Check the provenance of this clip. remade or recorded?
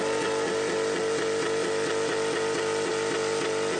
recorded